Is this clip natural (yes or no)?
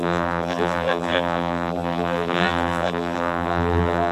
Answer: no